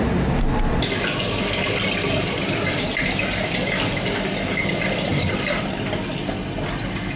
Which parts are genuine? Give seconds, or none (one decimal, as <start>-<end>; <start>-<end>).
0.0-7.2